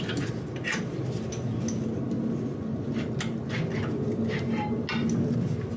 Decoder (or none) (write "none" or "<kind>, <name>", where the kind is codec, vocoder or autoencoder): none